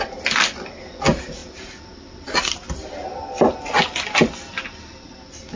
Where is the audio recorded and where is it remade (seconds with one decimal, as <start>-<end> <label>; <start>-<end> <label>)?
0.0-5.6 recorded